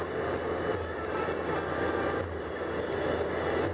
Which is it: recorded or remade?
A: recorded